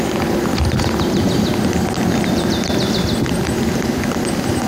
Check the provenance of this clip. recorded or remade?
recorded